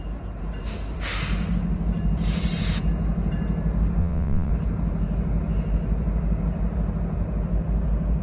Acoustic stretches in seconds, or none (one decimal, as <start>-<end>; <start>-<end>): 0.0-4.0; 4.5-8.2

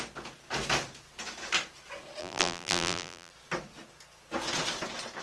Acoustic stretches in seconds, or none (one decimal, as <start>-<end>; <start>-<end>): 0.0-2.2; 3.3-5.2